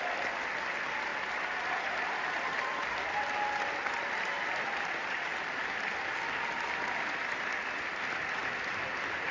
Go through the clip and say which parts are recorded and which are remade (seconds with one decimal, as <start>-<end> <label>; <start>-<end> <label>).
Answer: 0.0-9.3 recorded